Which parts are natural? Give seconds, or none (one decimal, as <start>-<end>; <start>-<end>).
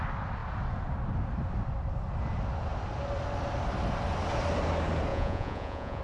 0.0-5.1